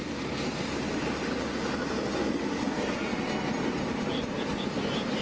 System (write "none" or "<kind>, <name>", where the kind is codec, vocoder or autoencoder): none